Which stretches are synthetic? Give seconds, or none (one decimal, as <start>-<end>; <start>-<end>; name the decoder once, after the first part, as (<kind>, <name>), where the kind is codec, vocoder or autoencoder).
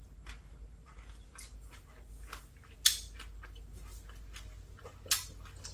none